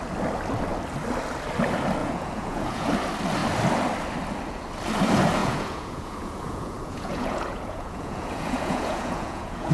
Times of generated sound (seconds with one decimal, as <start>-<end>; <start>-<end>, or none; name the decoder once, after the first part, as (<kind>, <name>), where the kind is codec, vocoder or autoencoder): 2.0-2.9 (vocoder, Vocos); 5.4-9.7